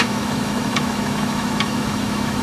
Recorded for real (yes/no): no